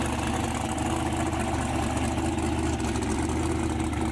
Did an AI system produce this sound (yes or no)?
no